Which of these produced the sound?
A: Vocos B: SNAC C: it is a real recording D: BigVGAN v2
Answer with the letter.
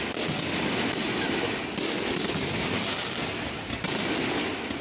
C